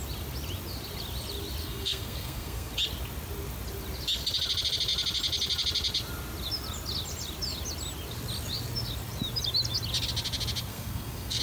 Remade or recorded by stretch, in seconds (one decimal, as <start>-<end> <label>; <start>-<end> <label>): 0.0-1.6 recorded; 1.6-2.7 remade; 2.7-10.7 recorded; 10.7-11.4 remade